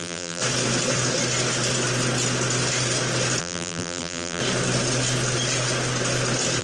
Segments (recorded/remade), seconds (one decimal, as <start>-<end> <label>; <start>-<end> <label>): 0.0-0.4 remade; 0.4-3.4 recorded; 3.4-4.4 remade; 4.4-6.6 recorded